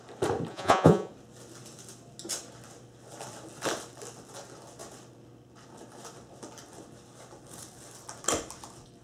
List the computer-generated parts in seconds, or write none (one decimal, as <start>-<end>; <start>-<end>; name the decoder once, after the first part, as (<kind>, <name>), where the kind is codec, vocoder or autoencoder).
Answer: 0.5-1.1 (vocoder, Vocos)